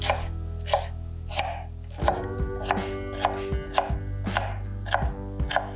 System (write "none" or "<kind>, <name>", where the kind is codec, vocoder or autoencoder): none